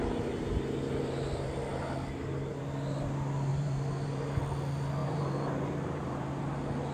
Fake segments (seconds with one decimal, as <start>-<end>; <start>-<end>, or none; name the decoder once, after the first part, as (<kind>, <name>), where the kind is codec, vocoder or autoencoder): 3.5-4.4 (vocoder, BigVGAN v2); 5.0-6.5